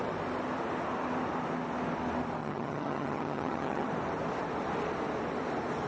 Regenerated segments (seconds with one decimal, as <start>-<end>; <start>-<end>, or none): 2.4-3.9